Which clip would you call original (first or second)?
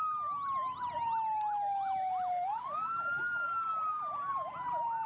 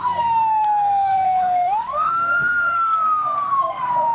first